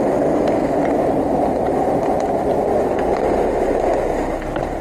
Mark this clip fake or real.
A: real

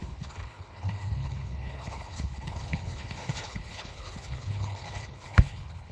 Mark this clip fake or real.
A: fake